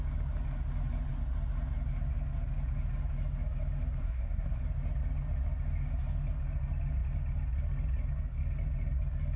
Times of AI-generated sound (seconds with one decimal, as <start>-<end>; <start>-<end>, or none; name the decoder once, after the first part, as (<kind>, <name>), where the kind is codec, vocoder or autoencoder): 4.0-4.6 (codec, SNAC)